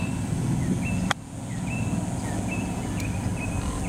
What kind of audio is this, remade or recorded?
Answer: recorded